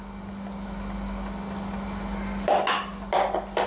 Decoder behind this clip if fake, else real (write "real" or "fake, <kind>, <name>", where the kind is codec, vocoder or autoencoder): real